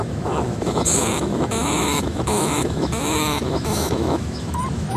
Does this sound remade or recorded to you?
remade